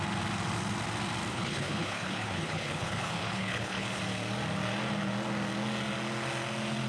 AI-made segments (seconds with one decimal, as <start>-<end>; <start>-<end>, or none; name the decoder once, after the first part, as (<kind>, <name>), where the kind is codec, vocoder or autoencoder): 1.3-4.0 (codec, HILCodec)